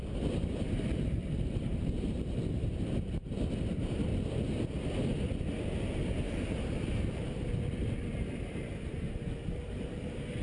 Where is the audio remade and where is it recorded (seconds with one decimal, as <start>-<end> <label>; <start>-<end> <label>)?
0.0-4.1 remade; 4.1-6.5 recorded; 6.5-10.4 remade